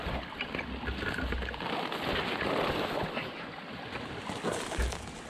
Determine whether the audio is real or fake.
real